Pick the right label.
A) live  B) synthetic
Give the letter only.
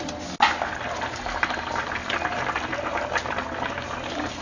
A